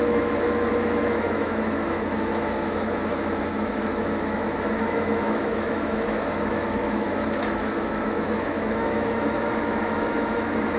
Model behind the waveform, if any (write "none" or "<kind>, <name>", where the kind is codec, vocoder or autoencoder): autoencoder, DAC-VAE